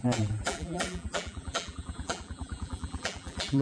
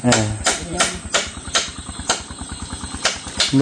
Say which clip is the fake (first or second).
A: first